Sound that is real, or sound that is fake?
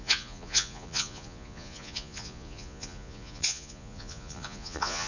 fake